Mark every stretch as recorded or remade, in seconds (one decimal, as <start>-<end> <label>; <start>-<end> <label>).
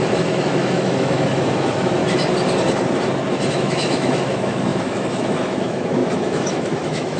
0.0-2.0 remade; 2.0-3.5 recorded; 3.5-7.2 remade